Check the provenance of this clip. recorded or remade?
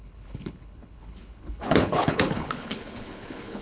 remade